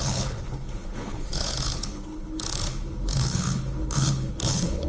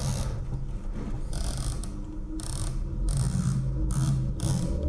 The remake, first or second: first